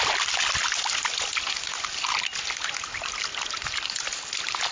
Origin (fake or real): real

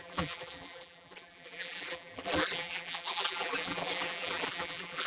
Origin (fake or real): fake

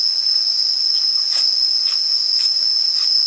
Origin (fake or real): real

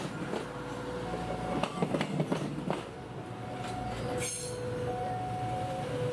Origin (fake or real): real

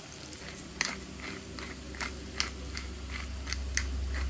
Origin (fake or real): real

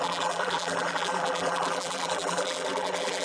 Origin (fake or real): fake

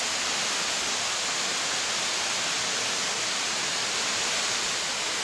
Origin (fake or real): real